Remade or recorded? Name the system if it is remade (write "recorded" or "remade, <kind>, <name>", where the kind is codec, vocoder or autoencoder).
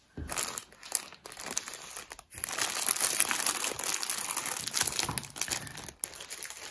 recorded